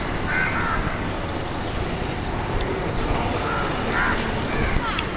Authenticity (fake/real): real